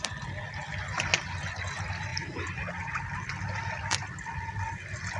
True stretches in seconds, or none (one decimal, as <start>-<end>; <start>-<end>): 0.0-5.2